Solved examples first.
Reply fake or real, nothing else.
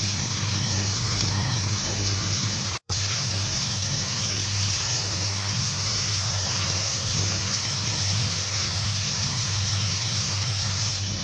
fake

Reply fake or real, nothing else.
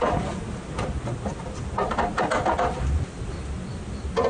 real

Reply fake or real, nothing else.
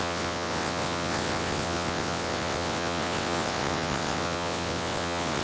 fake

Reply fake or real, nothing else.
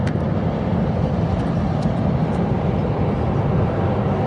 real